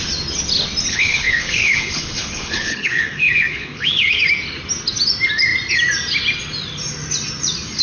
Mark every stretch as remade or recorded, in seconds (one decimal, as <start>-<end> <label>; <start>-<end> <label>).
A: 0.0-0.9 recorded; 0.9-4.2 remade; 4.2-7.8 recorded